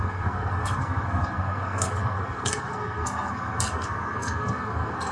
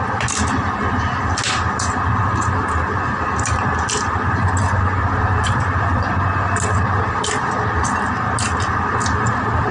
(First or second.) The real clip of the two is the second